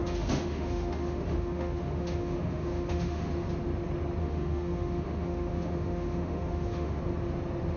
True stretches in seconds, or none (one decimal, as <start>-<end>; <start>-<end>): 3.3-4.2; 7.0-7.8